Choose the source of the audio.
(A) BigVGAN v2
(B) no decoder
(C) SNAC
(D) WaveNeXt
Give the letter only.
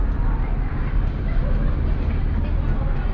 B